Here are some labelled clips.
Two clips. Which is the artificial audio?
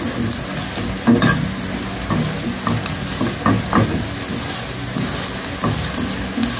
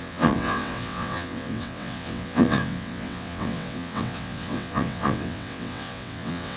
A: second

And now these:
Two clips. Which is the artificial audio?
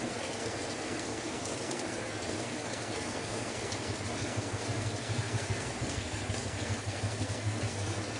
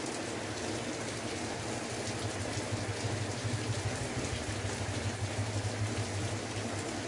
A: first